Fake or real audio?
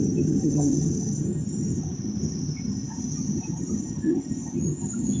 fake